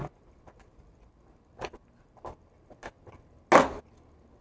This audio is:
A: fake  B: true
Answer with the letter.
B